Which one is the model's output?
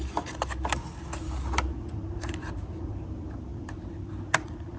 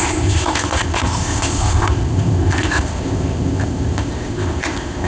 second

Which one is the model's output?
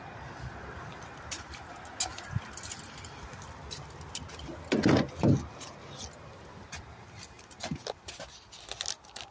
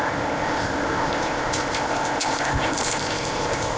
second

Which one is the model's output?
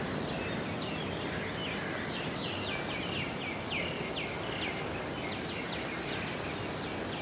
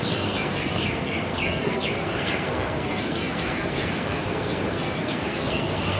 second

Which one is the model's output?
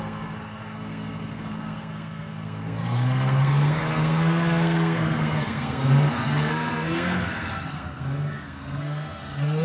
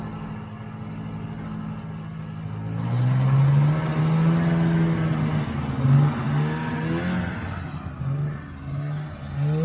first